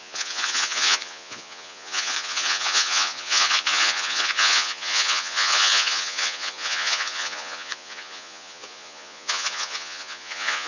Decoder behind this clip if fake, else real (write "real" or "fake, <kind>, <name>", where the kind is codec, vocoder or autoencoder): fake, vocoder, Vocos